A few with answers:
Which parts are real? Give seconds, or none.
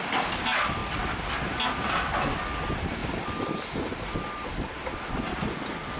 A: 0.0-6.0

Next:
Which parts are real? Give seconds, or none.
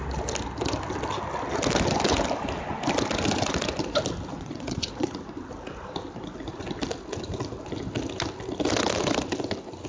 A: 0.0-4.3; 5.1-9.9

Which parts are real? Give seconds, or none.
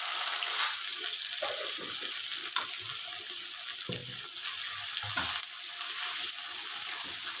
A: 0.0-7.4